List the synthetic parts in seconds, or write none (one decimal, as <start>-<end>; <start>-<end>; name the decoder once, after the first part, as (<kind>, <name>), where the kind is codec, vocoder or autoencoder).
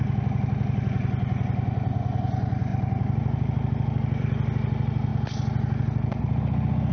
none